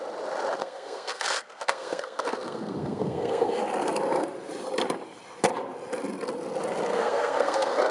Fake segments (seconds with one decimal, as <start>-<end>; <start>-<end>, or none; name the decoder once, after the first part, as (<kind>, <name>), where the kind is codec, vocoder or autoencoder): 0.6-3.6 (codec, SNAC); 6.9-7.9